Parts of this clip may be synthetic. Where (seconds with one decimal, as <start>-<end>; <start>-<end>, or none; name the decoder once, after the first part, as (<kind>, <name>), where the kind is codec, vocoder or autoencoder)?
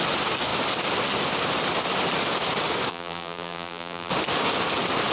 2.9-4.1 (vocoder, BigVGAN v2)